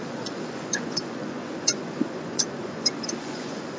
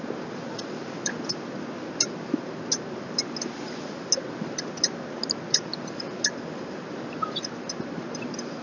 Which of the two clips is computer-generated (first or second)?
first